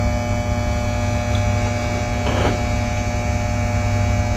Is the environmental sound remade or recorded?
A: recorded